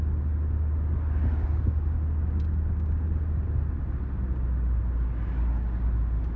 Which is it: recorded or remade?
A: recorded